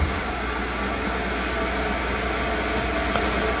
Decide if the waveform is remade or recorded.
recorded